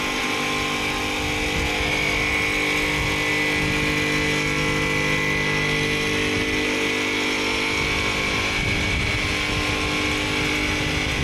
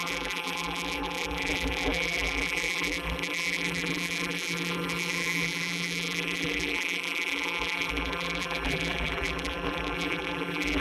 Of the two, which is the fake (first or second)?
second